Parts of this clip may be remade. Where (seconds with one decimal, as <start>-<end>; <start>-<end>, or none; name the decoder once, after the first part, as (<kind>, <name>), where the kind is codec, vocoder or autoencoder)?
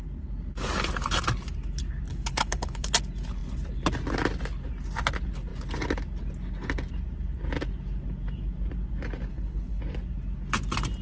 2.1-2.9 (codec, HILCodec); 9.3-9.8